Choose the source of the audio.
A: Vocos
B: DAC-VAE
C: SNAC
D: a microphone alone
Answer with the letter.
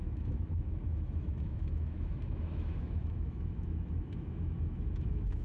B